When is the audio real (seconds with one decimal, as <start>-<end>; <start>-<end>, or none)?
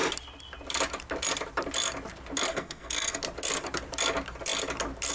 0.0-2.5; 3.2-5.1